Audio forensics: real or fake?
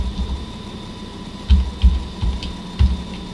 real